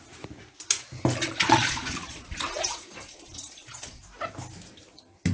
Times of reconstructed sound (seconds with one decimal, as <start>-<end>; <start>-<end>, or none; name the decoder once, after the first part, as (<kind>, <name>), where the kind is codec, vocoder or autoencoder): 1.2-4.0 (vocoder, Vocos)